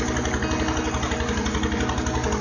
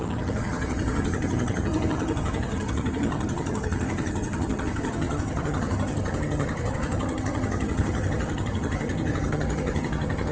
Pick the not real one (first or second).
second